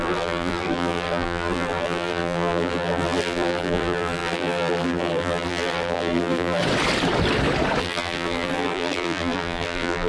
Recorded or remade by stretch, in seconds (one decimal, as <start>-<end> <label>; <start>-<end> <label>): 0.0-6.6 remade; 6.6-7.8 recorded; 7.8-10.1 remade